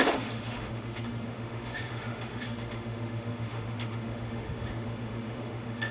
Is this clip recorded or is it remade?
remade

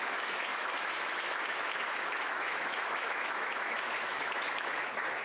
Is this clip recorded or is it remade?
remade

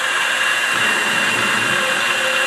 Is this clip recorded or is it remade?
recorded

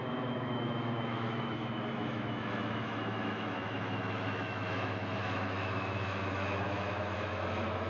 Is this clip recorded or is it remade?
remade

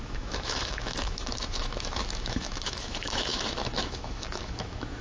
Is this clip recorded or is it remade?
remade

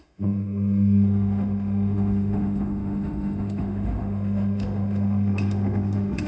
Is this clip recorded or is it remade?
remade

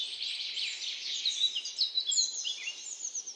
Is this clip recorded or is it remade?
recorded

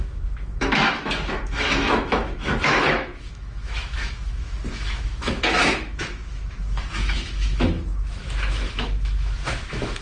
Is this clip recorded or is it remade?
remade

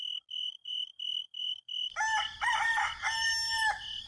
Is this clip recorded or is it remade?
recorded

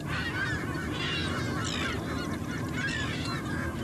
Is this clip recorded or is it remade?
recorded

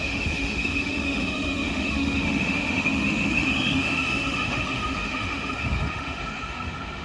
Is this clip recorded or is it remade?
remade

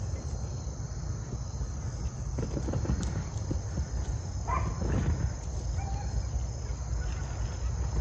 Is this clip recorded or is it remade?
recorded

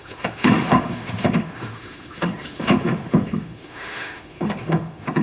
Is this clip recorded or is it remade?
remade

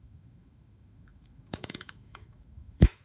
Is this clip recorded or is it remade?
remade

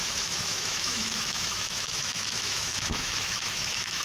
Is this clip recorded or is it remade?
remade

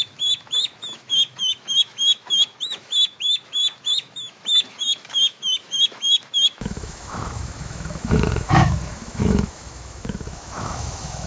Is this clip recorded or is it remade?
remade